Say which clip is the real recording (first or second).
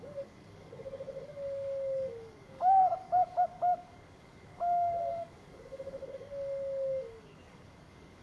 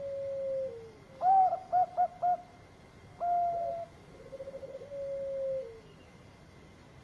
second